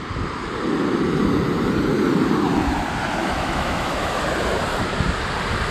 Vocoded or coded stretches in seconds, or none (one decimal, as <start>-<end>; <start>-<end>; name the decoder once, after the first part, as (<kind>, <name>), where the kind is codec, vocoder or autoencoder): 3.2-4.2 (autoencoder, DAC-VAE)